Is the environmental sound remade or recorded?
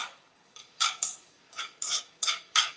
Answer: remade